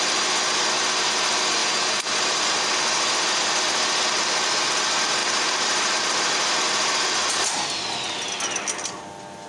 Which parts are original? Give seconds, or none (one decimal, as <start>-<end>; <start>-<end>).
0.0-1.6; 2.7-5.2; 6.3-9.5